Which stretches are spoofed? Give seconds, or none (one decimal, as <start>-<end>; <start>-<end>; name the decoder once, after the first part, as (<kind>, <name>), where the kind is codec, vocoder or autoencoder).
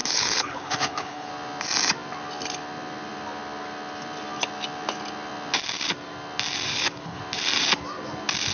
0.0-1.3 (codec, HILCodec); 6.7-7.2